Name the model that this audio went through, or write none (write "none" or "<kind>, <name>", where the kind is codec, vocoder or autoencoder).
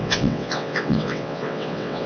vocoder, WaveNeXt